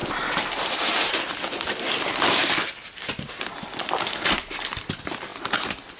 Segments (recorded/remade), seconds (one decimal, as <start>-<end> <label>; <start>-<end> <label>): 0.0-6.0 recorded